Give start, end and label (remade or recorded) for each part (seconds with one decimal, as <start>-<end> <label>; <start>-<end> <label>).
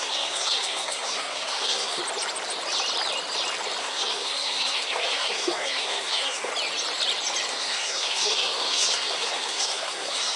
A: 0.0-2.0 remade; 2.0-3.8 recorded; 3.8-6.5 remade; 6.5-7.5 recorded; 7.5-10.4 remade